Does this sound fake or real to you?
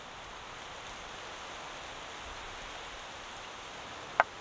real